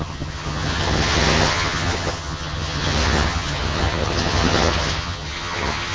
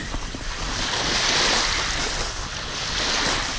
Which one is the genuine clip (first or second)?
second